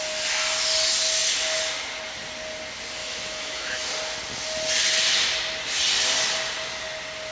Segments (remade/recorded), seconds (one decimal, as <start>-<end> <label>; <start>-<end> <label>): 0.0-3.0 recorded; 3.0-3.9 remade; 3.9-7.3 recorded